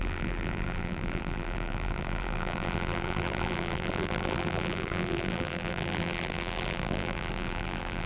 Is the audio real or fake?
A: fake